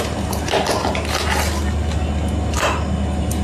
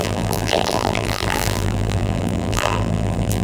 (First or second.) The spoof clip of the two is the second